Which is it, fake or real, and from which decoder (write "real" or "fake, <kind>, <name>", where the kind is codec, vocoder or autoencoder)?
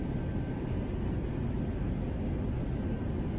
real